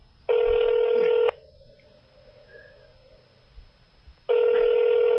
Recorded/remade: recorded